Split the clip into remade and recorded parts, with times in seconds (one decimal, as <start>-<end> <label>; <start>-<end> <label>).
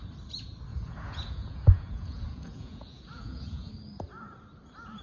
0.0-0.7 recorded; 0.7-3.7 remade; 3.7-5.0 recorded